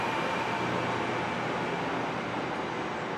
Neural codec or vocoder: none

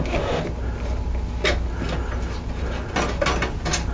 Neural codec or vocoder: none